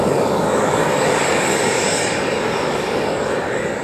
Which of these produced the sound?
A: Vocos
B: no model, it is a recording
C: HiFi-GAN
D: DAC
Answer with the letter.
D